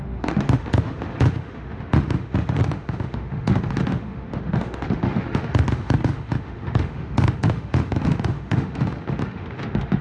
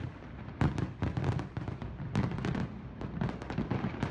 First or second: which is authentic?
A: second